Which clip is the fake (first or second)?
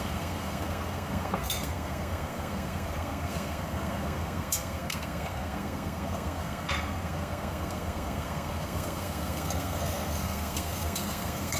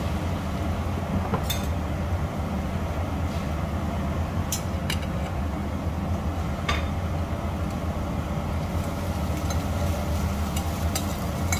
first